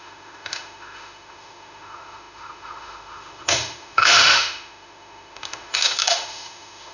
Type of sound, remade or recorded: remade